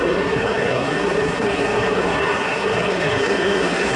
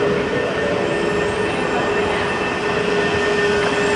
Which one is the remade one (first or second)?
first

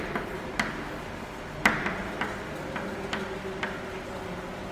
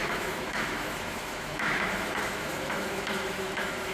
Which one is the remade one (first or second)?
second